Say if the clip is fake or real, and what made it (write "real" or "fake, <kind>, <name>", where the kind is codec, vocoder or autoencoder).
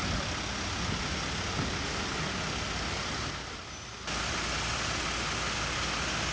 real